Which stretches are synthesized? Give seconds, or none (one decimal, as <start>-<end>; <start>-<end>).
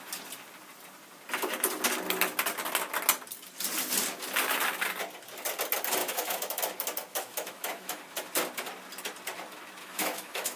6.0-6.6; 7.1-8.0; 9.8-10.6